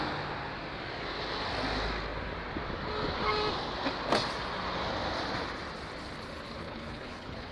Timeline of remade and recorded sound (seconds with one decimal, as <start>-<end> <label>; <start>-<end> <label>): 0.0-6.6 recorded; 6.6-7.5 remade